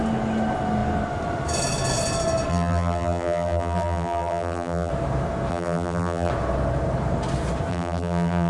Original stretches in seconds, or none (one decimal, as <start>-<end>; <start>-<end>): 0.0-2.5; 4.9-5.5; 6.3-7.7